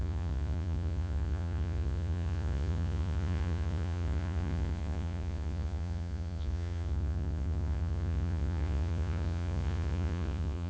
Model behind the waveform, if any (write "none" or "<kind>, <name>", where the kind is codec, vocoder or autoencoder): vocoder, Vocos